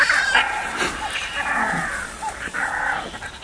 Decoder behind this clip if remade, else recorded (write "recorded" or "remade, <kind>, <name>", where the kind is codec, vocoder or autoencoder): recorded